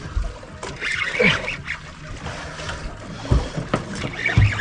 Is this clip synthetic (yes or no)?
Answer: no